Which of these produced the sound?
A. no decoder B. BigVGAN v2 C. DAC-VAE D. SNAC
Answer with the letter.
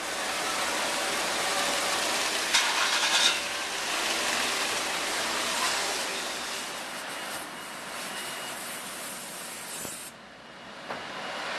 A